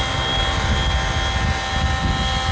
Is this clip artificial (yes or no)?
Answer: no